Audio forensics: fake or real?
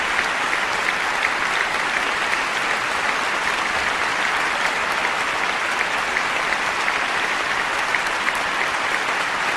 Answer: real